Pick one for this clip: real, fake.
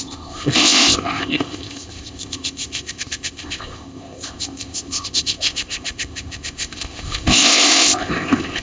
fake